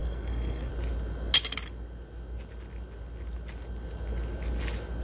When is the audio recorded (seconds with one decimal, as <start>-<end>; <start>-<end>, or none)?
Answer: 0.7-5.0